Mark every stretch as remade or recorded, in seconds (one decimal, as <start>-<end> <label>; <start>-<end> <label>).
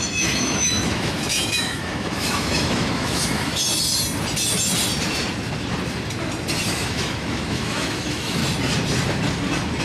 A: 0.0-3.5 remade; 3.5-6.7 recorded; 6.7-8.4 remade; 8.4-9.8 recorded